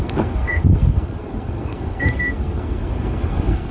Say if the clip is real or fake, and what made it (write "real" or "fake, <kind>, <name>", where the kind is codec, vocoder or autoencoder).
fake, codec, SNAC